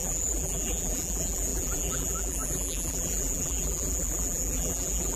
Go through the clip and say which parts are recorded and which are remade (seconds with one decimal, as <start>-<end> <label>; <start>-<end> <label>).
0.0-5.2 remade